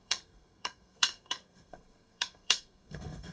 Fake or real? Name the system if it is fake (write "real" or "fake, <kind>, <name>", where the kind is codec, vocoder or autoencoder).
fake, codec, SNAC